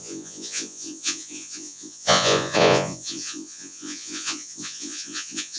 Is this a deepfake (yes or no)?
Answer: yes